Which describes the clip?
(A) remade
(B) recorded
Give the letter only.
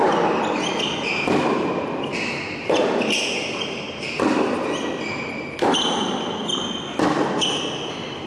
B